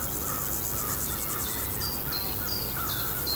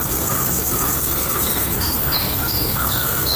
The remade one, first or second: second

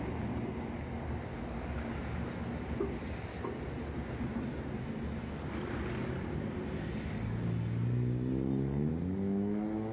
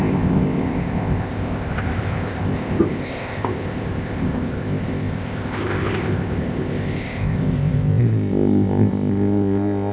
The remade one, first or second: second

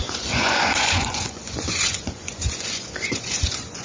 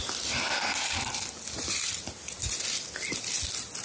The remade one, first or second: first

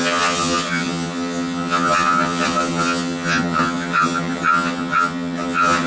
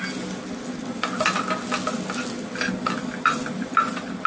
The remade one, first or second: first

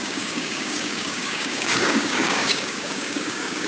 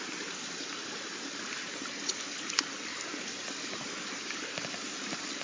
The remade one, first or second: first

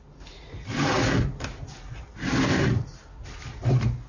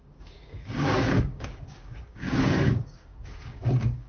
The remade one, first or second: second